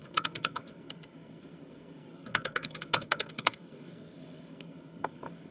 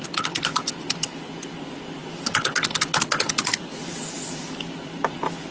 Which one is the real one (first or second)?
second